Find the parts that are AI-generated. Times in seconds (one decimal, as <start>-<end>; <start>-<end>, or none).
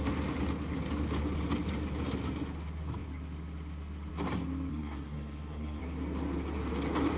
4.7-5.8